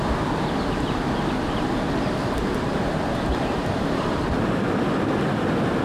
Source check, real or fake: real